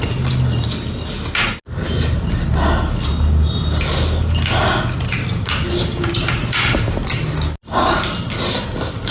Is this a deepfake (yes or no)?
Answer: no